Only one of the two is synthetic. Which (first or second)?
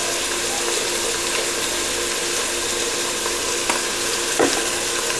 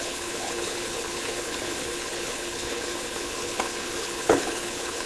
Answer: second